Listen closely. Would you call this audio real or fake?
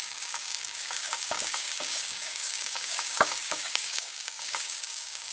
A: fake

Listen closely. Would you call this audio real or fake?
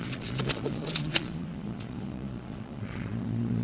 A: fake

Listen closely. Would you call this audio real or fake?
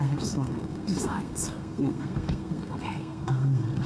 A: fake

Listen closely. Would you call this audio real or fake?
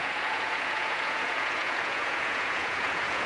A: fake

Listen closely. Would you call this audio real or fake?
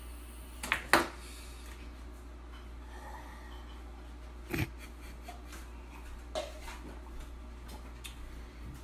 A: real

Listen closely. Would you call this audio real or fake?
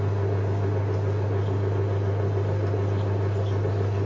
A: real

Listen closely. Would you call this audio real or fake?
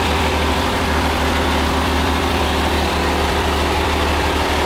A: fake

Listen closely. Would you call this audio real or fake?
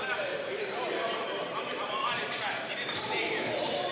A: fake